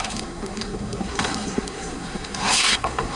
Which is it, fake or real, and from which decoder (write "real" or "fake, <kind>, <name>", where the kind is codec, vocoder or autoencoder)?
fake, codec, SNAC